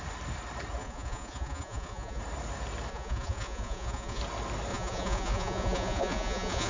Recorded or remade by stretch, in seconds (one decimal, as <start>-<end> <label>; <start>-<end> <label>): 0.0-0.8 recorded; 0.8-2.2 remade; 2.2-2.9 recorded; 2.9-4.2 remade; 4.2-4.7 recorded; 4.7-6.7 remade